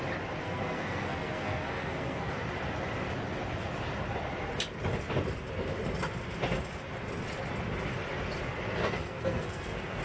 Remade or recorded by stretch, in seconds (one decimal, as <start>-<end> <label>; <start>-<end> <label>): 0.0-0.4 recorded; 0.4-2.4 remade; 2.4-8.8 recorded; 8.8-10.0 remade